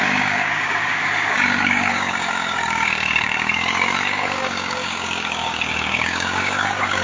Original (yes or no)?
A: no